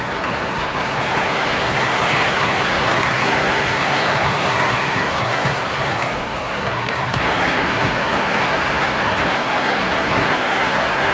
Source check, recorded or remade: remade